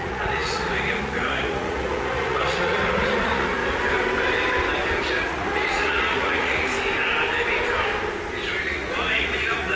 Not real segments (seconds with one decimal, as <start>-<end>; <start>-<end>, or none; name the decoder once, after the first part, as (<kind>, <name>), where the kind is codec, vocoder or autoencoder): 0.0-3.6 (vocoder, Vocos); 5.0-6.7; 8.6-9.8